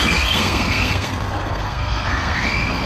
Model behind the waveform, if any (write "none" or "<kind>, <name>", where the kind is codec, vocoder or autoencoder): codec, SNAC